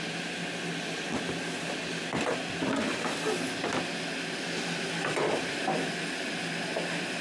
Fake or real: real